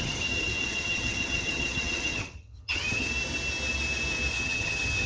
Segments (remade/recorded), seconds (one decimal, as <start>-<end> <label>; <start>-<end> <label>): 0.0-3.1 remade; 3.1-4.3 recorded; 4.3-5.1 remade